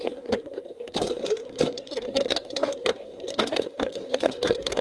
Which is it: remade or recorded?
remade